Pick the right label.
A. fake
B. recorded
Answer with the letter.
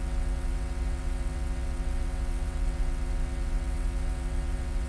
A